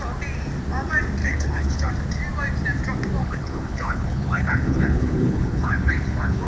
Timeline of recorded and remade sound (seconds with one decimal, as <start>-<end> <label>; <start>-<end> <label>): 0.0-1.2 recorded; 1.2-1.9 remade; 1.9-3.2 recorded; 3.2-6.5 remade